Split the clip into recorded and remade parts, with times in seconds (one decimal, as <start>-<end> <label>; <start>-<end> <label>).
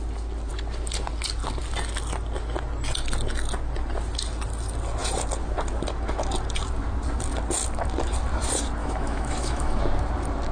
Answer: 0.0-8.8 recorded; 8.8-9.8 remade; 9.8-10.5 recorded